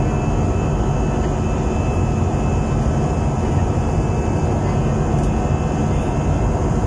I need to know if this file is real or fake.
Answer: real